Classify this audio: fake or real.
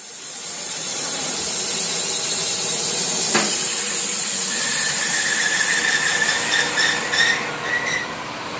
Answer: fake